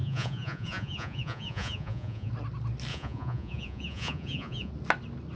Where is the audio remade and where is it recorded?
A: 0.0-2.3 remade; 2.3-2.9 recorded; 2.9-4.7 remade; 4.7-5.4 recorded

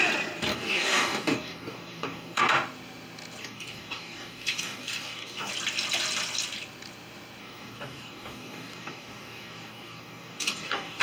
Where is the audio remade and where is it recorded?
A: 0.0-0.5 recorded; 0.5-2.4 remade; 2.4-3.4 recorded; 3.4-5.5 remade; 5.5-7.4 recorded; 7.4-11.0 remade

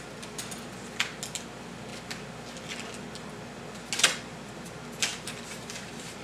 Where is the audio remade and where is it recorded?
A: 0.0-5.1 recorded; 5.1-6.2 remade